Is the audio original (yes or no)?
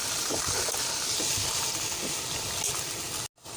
yes